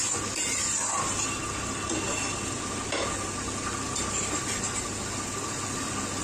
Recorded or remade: recorded